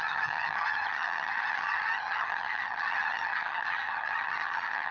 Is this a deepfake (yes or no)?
yes